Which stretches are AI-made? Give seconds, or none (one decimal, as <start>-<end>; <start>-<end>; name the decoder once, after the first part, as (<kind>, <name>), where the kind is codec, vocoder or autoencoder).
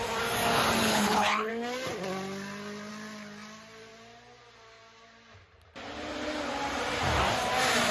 0.8-1.5 (codec, HILCodec)